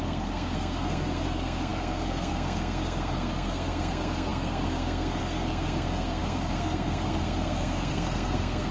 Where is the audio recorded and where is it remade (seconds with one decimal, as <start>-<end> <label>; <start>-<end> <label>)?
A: 0.0-8.7 remade